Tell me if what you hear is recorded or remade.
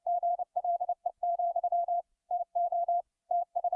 remade